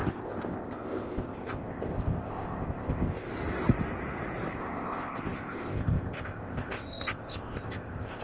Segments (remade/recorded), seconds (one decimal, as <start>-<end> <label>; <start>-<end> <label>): 0.0-3.3 remade; 3.3-4.5 recorded; 4.5-8.2 remade